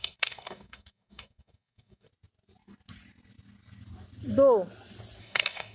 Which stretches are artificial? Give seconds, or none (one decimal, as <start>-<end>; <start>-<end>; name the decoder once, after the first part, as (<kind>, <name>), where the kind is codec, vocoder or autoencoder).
0.0-2.1 (codec, DAC); 5.2-5.7